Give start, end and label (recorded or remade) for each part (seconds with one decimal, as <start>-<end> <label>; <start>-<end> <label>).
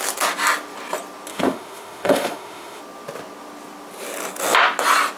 0.0-1.3 recorded; 1.3-2.8 remade; 2.8-5.2 recorded